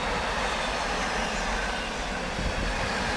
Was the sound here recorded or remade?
recorded